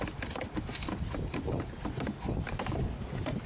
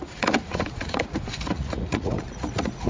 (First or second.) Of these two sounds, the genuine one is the first